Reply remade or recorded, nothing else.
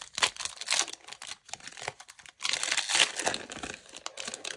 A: recorded